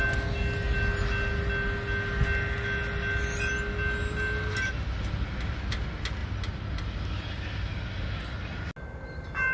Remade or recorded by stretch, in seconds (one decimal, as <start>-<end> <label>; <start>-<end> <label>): 0.0-9.5 recorded